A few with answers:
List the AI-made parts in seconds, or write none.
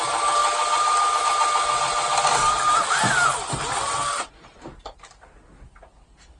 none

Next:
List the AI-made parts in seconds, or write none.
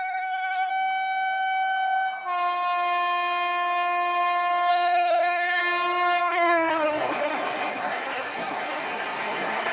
0.0-0.7 (codec, SNAC); 4.7-5.6; 6.2-9.7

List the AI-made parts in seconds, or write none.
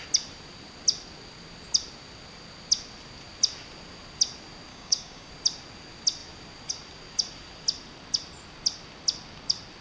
4.7-5.3 (codec, DAC)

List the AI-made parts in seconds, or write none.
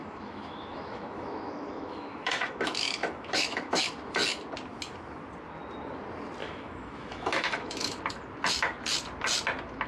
0.0-3.8 (autoencoder, DAC-VAE); 6.4-8.0